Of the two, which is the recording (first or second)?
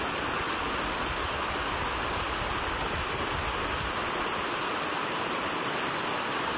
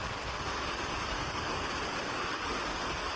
first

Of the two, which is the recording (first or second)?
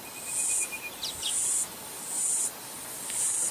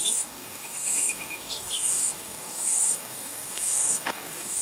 first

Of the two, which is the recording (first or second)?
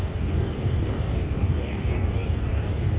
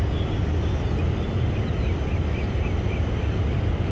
second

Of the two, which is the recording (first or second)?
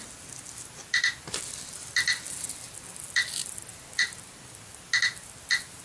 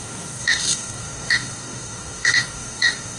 first